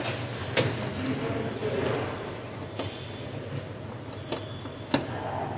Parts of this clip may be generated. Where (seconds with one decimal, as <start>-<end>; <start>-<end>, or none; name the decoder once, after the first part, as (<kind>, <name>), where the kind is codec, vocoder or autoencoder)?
0.4-0.9 (vocoder, BigVGAN v2)